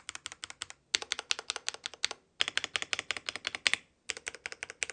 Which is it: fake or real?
real